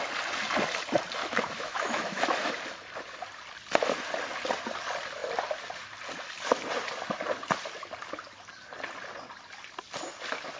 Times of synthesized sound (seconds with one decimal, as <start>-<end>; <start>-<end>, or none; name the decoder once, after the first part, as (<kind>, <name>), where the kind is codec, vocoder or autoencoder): 1.2-2.5 (autoencoder, DAC-VAE)